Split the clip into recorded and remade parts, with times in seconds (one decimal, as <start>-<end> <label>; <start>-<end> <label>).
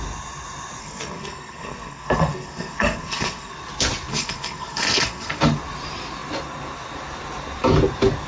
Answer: 0.0-0.8 recorded; 0.8-3.5 remade; 3.5-4.1 recorded; 4.1-5.4 remade; 5.4-8.3 recorded